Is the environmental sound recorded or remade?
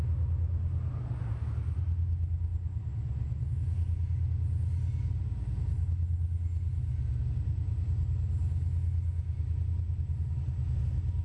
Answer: recorded